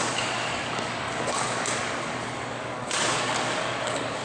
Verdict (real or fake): fake